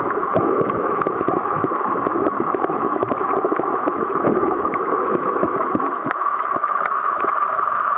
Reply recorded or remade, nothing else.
remade